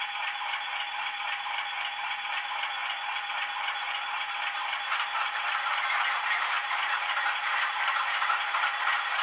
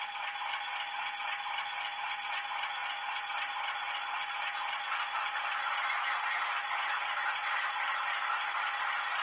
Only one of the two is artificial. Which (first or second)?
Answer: first